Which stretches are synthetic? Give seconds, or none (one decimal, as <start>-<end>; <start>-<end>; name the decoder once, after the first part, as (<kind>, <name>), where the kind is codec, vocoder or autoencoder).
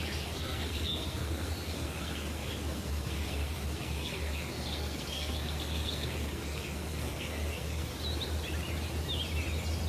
0.0-7.9 (codec, SNAC)